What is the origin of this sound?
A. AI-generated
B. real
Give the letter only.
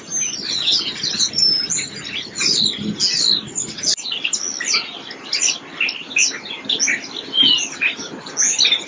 B